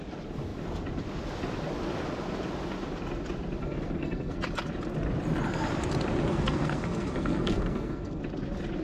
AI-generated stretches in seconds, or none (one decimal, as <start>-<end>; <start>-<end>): 3.6-4.4; 6.3-8.2